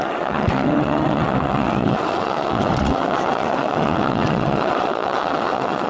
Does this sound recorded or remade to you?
remade